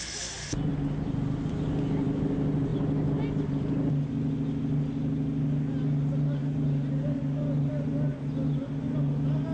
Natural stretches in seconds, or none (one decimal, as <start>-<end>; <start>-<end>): 0.0-9.5